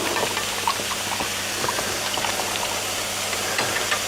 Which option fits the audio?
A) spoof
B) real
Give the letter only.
B